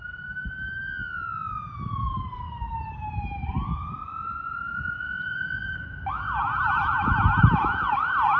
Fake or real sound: real